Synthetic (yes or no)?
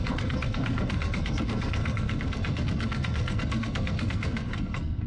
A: yes